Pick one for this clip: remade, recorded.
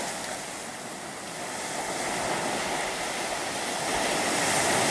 recorded